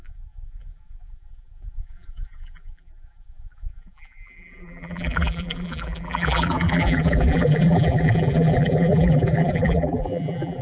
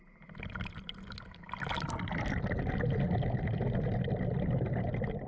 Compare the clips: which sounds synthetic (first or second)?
first